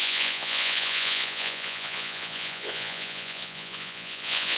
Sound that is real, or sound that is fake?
fake